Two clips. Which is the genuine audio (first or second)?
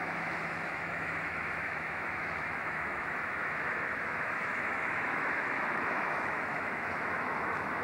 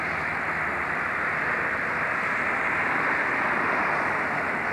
second